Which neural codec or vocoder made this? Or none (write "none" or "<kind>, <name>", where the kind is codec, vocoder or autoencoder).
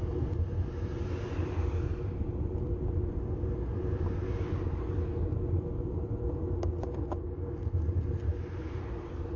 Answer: none